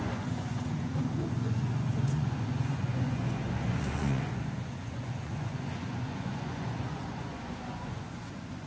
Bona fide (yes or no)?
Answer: no